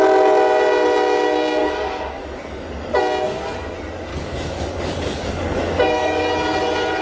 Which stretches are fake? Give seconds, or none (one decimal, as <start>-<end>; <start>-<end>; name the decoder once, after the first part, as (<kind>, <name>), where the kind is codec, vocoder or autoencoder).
1.6-3.0 (codec, DAC); 4.1-6.2